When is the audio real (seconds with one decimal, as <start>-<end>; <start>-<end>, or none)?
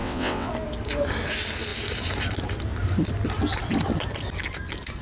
0.5-5.0